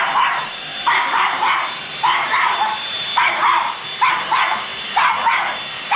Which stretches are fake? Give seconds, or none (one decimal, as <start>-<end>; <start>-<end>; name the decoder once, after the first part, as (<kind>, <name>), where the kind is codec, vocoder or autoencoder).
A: 0.0-3.1 (vocoder, BigVGAN v2); 4.1-4.7